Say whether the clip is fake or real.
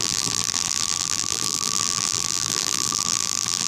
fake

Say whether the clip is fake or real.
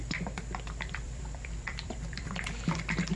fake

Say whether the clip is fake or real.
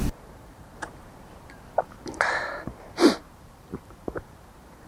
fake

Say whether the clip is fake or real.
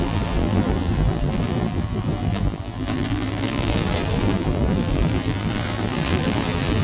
fake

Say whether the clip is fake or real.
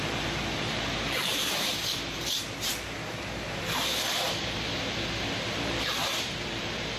fake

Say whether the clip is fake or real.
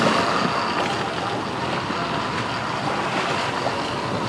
real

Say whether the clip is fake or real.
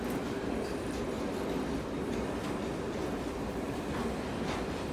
real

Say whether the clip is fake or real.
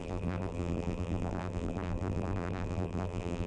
fake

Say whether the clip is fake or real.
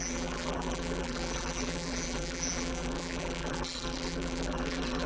fake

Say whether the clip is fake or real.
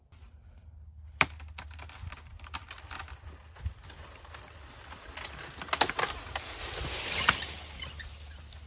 real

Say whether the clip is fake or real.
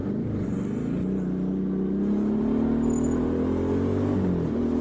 real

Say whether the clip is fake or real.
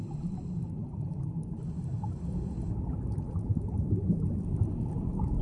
real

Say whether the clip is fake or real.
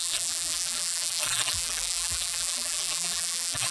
fake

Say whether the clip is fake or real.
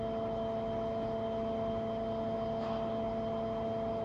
real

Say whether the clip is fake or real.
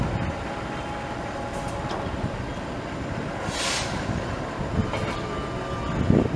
real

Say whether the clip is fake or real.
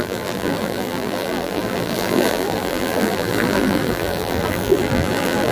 fake